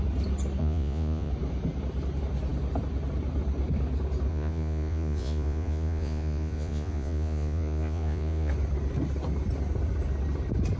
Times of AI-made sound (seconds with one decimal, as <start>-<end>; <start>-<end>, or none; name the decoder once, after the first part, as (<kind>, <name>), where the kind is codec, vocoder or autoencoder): 0.6-1.3 (vocoder, Vocos); 4.3-8.5